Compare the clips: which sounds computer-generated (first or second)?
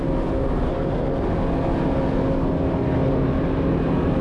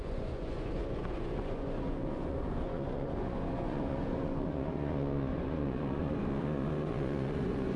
second